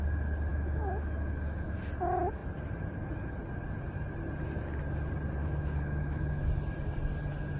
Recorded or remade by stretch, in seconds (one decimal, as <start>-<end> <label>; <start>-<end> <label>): 0.0-0.5 recorded; 0.5-1.8 remade; 1.8-5.4 recorded; 5.4-6.5 remade; 6.5-7.6 recorded